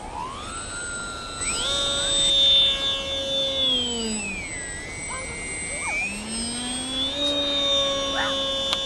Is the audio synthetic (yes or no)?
no